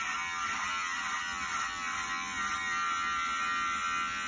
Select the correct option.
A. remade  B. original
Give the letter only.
B